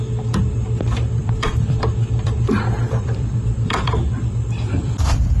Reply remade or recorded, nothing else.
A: remade